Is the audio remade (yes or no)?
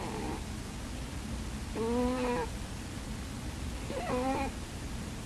no